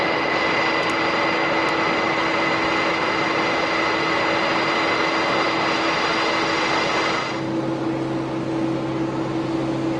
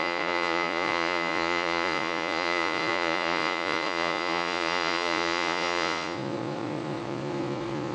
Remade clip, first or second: second